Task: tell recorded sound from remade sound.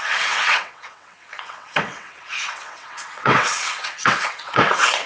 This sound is remade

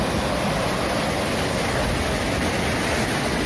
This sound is recorded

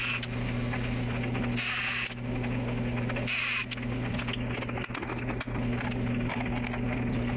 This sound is recorded